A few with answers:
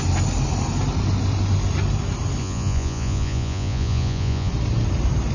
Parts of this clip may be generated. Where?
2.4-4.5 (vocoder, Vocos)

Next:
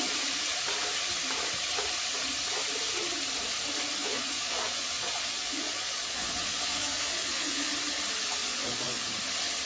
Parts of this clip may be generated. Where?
4.0-7.7 (vocoder, Vocos); 8.4-9.1

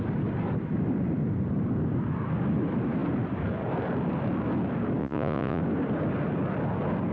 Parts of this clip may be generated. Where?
5.0-5.6 (vocoder, Vocos)

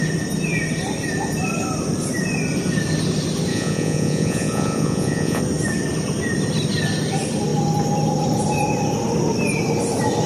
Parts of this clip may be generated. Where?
3.5-5.4 (vocoder, Vocos)